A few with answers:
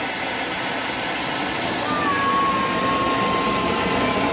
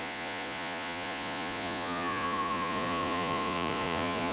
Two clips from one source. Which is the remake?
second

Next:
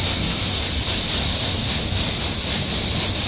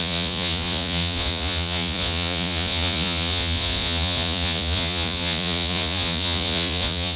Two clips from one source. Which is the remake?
second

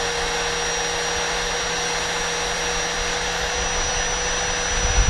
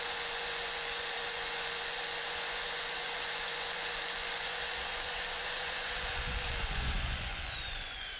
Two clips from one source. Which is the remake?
second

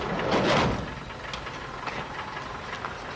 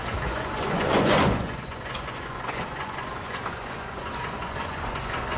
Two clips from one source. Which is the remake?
second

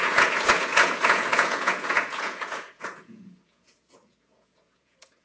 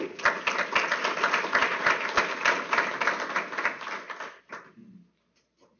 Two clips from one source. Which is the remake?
first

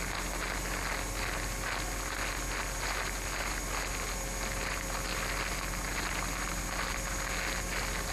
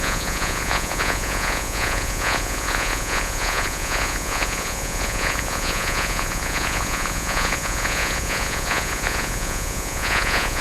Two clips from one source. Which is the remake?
second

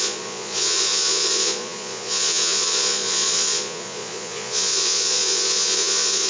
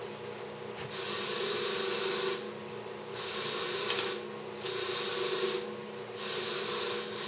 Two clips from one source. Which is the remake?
first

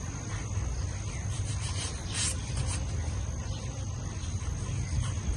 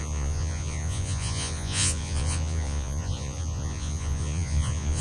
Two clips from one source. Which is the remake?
second